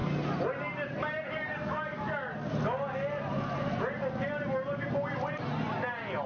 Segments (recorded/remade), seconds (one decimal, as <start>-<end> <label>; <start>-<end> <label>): 0.0-6.3 recorded